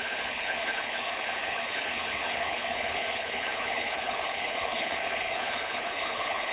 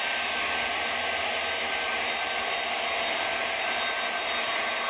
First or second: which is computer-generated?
first